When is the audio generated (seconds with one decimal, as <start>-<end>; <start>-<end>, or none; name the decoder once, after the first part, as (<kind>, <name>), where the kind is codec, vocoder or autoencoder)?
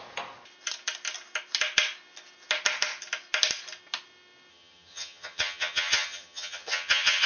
4.5-7.3 (vocoder, HiFi-GAN)